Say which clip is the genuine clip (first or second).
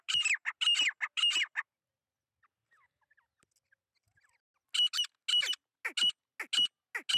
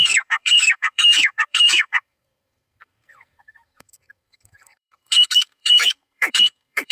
first